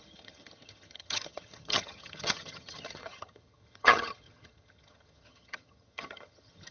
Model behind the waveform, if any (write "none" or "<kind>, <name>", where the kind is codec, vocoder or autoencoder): vocoder, HiFi-GAN